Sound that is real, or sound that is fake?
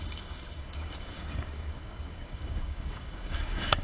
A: fake